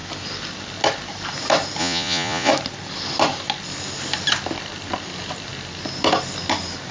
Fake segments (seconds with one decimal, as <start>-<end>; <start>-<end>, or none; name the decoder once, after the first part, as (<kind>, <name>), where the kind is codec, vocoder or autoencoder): 1.8-2.5 (vocoder, Vocos)